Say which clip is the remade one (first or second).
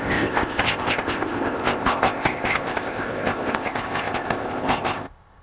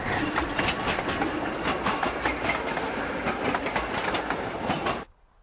first